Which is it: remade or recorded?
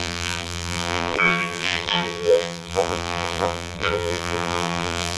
remade